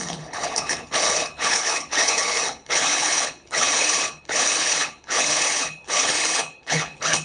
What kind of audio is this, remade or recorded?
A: remade